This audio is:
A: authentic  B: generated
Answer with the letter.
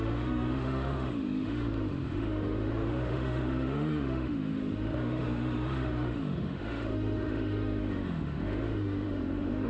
B